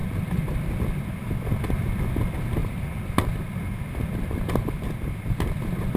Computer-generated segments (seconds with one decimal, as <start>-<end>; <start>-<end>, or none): none